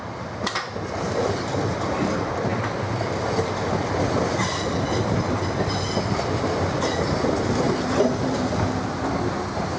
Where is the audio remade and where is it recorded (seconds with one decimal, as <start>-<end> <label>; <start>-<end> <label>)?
0.0-9.8 recorded